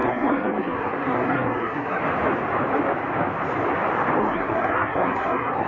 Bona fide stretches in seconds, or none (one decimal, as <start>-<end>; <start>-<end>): 2.0-4.2